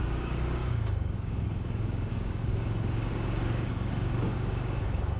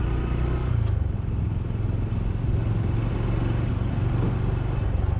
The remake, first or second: first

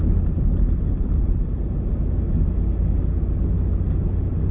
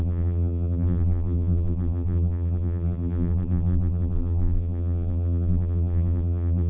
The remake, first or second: second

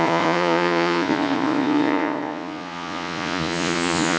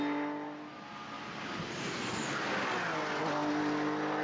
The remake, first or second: first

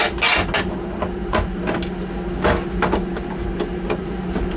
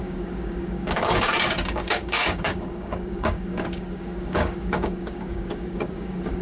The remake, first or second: second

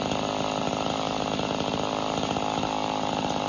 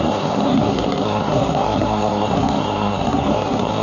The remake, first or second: second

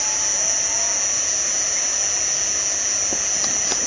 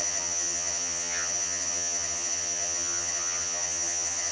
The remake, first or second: second